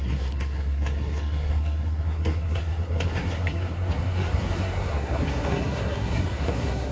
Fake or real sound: fake